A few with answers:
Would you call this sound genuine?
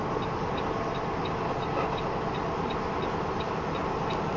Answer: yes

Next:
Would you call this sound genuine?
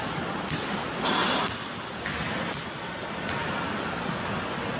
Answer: yes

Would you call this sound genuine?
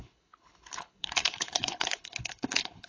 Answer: no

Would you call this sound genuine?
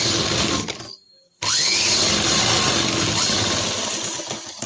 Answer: yes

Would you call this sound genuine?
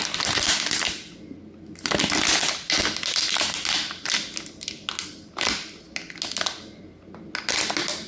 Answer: yes